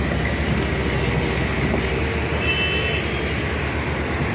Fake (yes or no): no